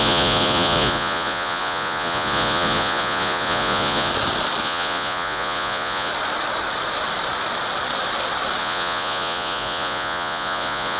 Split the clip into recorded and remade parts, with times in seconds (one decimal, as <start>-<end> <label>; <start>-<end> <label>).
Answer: 0.0-4.1 remade; 4.1-4.6 recorded; 4.6-6.1 remade; 6.1-8.6 recorded; 8.6-11.0 remade